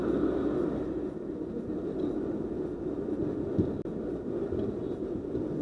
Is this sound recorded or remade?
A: recorded